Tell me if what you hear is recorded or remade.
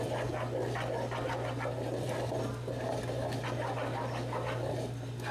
recorded